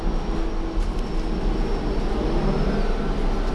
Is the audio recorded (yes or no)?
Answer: yes